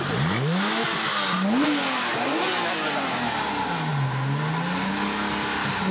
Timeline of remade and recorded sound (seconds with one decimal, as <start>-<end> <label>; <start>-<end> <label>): 0.0-5.9 recorded